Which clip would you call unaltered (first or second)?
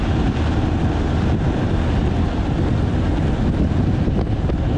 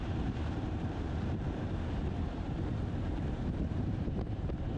first